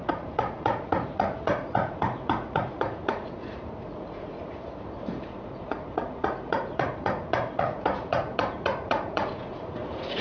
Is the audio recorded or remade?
remade